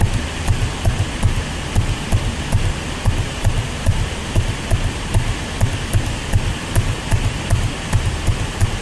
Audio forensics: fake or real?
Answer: real